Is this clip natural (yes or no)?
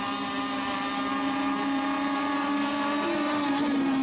yes